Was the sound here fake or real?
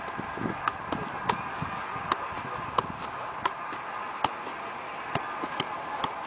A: real